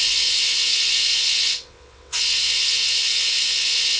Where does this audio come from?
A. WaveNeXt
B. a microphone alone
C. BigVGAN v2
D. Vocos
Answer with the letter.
A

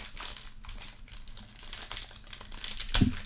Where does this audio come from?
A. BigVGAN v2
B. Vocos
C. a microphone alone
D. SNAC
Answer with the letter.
C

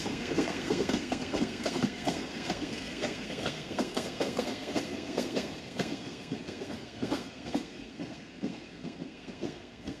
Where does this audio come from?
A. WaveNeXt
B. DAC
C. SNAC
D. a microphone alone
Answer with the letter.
C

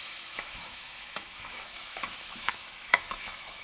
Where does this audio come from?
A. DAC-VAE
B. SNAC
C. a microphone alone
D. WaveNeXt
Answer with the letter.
A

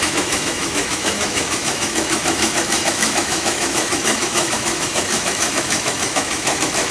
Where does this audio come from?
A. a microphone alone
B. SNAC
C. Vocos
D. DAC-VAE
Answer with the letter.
D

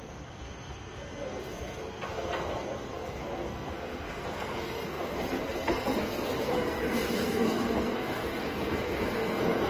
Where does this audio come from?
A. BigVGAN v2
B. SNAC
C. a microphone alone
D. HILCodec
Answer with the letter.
B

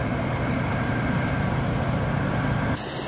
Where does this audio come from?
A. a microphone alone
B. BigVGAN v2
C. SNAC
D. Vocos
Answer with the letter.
B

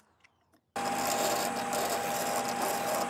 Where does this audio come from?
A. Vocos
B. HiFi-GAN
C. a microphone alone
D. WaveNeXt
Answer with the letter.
C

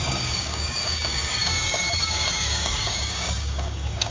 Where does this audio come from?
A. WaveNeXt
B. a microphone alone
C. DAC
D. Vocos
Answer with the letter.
C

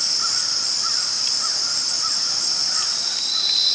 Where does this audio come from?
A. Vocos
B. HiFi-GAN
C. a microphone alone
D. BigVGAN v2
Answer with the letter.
C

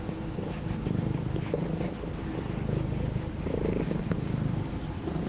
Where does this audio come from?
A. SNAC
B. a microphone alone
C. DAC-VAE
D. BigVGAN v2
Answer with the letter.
B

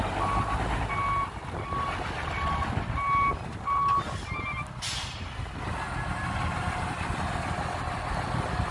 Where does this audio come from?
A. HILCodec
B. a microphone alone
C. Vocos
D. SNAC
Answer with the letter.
B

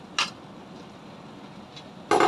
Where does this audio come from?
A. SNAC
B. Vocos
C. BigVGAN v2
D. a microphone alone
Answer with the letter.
D